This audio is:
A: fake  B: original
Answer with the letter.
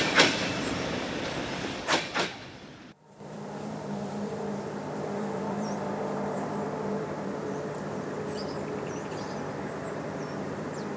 A